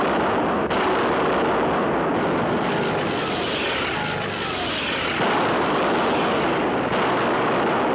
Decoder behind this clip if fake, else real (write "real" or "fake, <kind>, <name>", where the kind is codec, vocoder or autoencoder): real